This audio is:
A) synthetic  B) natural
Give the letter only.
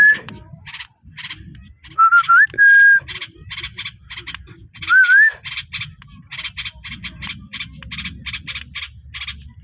B